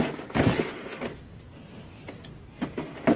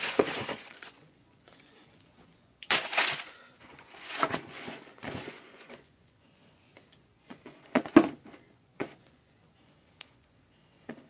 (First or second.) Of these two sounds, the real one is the first